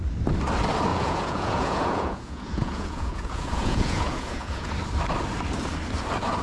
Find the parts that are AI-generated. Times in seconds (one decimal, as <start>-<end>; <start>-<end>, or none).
0.9-4.7